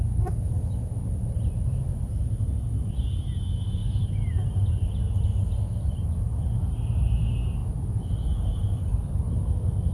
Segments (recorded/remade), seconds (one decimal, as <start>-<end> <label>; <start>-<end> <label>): 0.0-9.9 recorded